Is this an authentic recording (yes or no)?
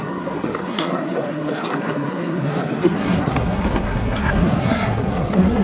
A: no